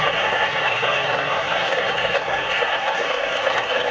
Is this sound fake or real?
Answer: fake